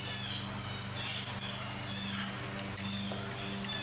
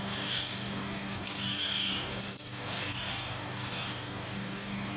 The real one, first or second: first